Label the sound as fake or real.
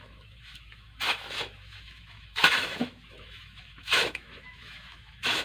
fake